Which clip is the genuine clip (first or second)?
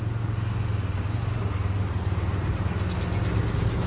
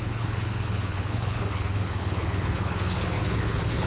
first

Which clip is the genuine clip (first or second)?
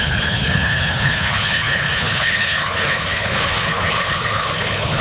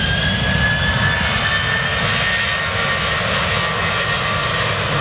second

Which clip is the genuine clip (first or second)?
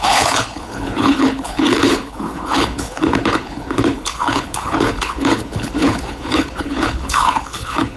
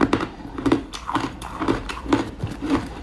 second